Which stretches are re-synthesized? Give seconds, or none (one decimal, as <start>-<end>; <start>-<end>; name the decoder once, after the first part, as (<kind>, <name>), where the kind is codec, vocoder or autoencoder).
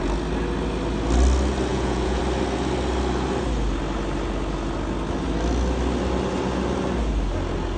1.7-2.2 (vocoder, Vocos)